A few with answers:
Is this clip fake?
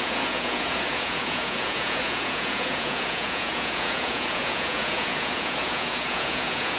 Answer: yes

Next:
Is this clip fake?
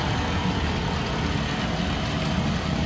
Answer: no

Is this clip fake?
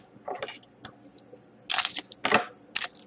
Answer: no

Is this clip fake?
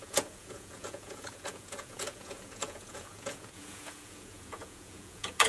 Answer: yes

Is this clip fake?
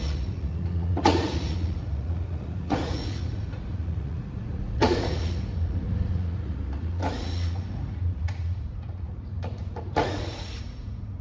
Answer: yes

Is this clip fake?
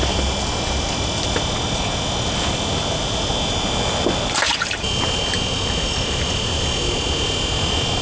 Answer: no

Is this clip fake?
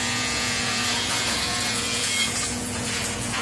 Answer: yes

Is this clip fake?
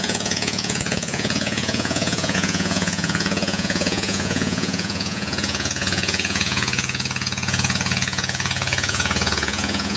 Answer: yes